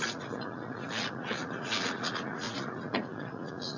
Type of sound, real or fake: fake